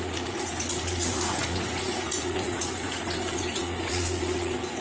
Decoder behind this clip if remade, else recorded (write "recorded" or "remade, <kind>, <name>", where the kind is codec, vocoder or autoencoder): remade, vocoder, Vocos